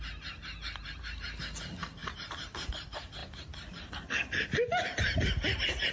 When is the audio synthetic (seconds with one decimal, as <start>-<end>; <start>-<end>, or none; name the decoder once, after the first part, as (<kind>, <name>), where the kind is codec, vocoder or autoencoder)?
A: 0.8-1.4 (vocoder, BigVGAN v2); 2.0-2.7; 3.2-3.9